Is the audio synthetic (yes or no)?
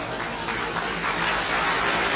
no